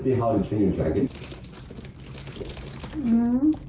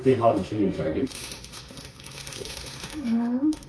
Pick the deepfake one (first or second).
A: second